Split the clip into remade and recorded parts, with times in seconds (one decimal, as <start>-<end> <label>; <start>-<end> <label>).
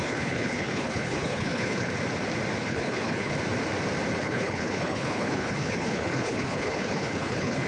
0.0-1.9 remade; 1.9-2.6 recorded; 2.6-3.3 remade; 3.3-4.2 recorded; 4.2-7.7 remade